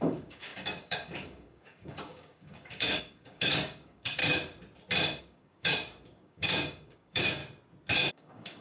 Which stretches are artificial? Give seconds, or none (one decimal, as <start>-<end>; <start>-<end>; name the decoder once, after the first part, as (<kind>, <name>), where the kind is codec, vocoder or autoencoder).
0.0-4.2 (codec, DAC); 5.2-7.4; 8.1-8.6